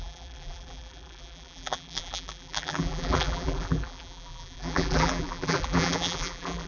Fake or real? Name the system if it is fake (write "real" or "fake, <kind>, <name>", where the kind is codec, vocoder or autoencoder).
fake, vocoder, BigVGAN v2